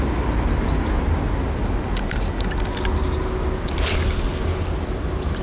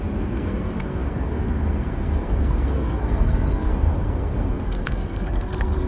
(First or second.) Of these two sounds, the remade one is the second